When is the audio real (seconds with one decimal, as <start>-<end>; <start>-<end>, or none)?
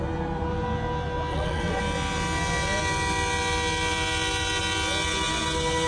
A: 0.0-1.3; 1.8-5.9